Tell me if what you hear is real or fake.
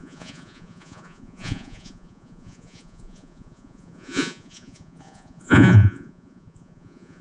fake